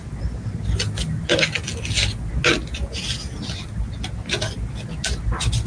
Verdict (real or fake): real